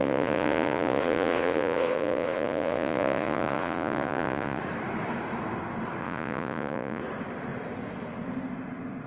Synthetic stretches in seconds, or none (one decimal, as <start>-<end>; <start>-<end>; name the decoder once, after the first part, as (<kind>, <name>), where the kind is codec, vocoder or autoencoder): 0.0-4.6 (vocoder, Vocos); 6.0-7.0